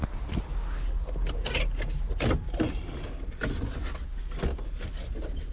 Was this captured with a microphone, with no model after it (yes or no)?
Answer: yes